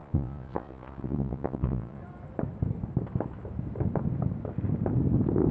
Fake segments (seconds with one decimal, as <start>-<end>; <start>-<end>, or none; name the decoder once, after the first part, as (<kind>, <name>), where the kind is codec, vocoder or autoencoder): 0.0-2.0 (vocoder, Vocos)